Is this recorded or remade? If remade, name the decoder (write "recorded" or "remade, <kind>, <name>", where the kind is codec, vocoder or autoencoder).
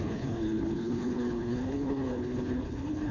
remade, codec, HILCodec